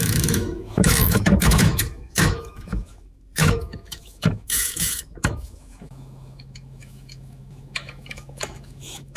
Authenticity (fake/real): fake